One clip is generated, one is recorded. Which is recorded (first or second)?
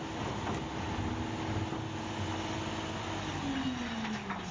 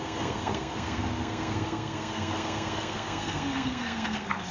first